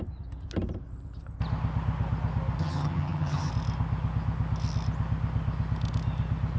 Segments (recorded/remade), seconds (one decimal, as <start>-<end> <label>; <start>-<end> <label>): 0.0-2.6 recorded; 2.6-3.5 remade; 3.5-6.6 recorded